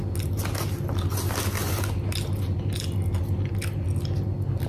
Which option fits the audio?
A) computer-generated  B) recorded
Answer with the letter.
B